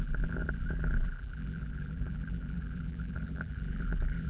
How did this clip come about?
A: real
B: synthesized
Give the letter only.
B